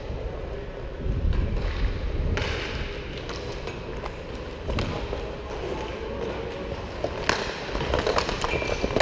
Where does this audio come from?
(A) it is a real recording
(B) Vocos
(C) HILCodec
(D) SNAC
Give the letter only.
A